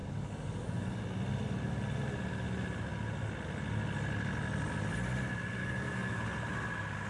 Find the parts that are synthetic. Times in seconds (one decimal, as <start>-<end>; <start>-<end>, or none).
0.0-1.0; 5.6-6.2